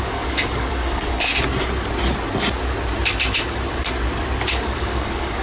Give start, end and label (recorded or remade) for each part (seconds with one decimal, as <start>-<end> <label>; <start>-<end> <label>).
0.0-1.3 remade; 1.3-4.5 recorded; 4.5-5.4 remade